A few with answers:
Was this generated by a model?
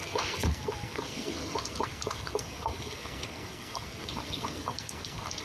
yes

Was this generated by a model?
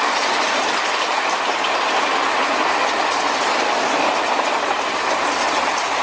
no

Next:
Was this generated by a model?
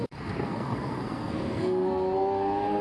yes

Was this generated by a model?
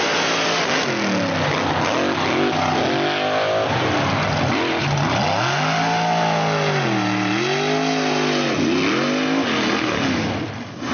no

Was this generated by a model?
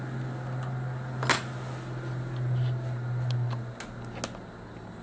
no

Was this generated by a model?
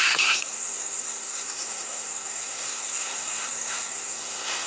yes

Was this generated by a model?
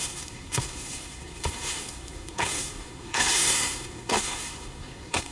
yes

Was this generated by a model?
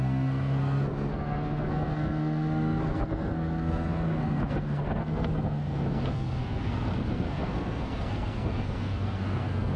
yes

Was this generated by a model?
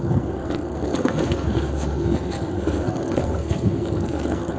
yes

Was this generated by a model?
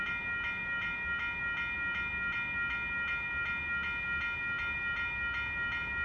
no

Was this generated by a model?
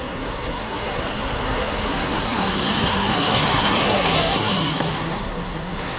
yes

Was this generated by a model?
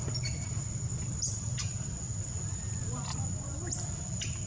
no